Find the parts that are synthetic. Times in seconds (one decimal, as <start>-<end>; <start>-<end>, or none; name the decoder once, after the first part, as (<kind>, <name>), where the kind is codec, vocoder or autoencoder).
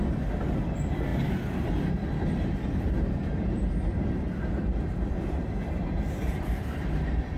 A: 0.0-7.4 (vocoder, BigVGAN v2)